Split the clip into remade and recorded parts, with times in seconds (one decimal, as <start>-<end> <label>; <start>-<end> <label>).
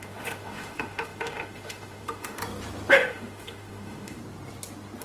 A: 0.0-2.4 remade; 2.4-2.9 recorded; 2.9-4.2 remade; 4.2-5.0 recorded